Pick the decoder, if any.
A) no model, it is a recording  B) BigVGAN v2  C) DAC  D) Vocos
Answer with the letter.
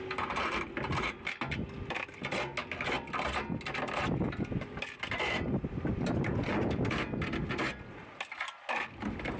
A